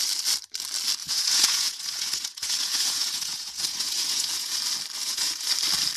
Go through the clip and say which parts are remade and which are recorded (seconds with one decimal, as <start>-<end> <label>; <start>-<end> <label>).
0.0-1.0 recorded; 1.0-4.6 remade; 4.6-5.0 recorded; 5.0-5.5 remade; 5.5-6.0 recorded